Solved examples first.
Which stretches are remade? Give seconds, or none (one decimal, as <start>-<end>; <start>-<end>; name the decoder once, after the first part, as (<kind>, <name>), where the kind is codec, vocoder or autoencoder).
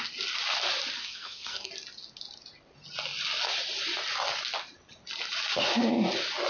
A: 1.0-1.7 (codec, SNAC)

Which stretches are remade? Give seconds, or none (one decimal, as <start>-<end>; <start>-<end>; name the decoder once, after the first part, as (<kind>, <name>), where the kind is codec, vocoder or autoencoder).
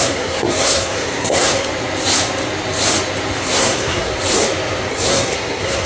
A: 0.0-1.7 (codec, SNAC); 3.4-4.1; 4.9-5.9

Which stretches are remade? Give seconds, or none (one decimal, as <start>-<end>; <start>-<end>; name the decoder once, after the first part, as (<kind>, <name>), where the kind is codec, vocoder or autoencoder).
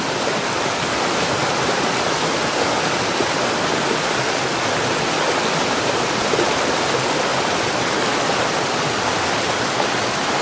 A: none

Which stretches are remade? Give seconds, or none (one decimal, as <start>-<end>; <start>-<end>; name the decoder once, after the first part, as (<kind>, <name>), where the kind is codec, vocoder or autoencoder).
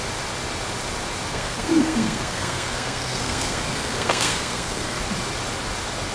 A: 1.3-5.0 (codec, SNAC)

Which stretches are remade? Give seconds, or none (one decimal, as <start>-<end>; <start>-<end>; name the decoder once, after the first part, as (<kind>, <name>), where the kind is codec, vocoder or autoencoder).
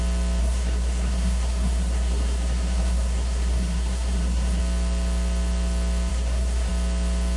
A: 0.4-4.6 (codec, SNAC); 6.1-6.7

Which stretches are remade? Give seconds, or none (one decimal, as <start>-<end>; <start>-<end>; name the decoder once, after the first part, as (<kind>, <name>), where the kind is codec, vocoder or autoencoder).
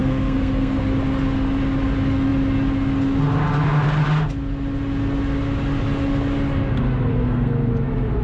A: 0.0-0.8 (codec, SNAC); 7.1-7.7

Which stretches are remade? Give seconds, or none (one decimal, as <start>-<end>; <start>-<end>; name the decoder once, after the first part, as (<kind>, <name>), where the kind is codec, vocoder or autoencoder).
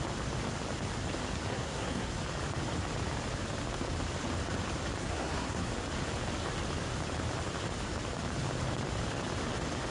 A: 1.5-2.1 (codec, SNAC); 5.0-5.7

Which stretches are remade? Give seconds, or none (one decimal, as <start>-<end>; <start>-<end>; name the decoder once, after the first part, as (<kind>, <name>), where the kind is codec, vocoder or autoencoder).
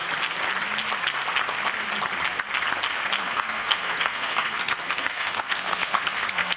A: 3.2-6.6 (codec, SNAC)